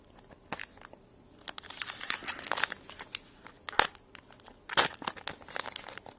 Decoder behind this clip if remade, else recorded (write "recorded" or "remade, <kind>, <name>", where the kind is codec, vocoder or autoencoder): recorded